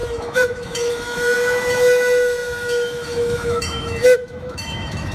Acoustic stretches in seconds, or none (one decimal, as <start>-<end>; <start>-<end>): none